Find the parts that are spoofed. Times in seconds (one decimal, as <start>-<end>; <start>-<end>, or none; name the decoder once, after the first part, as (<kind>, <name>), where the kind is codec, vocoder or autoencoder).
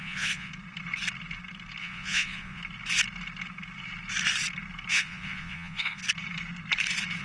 0.0-0.5 (vocoder, Vocos); 1.8-2.6; 4.9-6.0